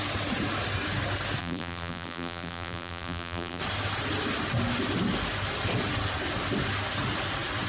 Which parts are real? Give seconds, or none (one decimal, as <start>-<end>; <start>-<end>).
0.0-1.4; 3.6-7.7